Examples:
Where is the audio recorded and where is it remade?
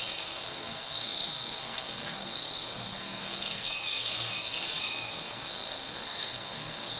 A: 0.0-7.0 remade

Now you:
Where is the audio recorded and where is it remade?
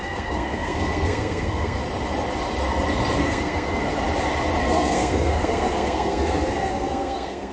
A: 0.0-1.8 remade; 1.8-3.2 recorded; 3.2-3.8 remade; 3.8-4.6 recorded; 4.6-7.5 remade